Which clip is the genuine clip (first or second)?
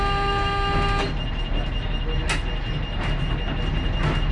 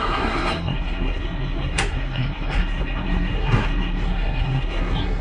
first